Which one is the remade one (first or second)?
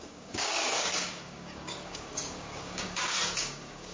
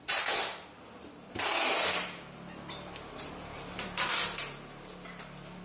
first